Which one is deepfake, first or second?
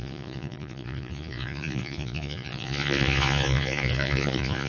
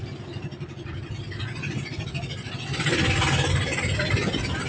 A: first